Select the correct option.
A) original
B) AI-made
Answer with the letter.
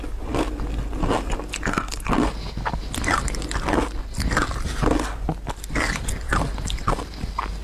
A